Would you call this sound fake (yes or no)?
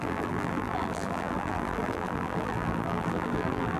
yes